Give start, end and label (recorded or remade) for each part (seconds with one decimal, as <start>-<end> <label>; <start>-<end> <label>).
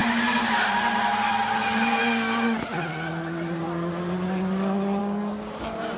0.0-5.0 recorded; 5.0-5.6 remade; 5.6-6.0 recorded